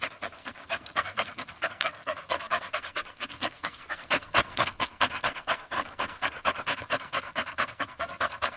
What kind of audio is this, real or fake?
fake